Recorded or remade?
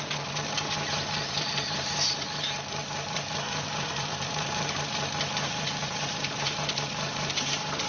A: remade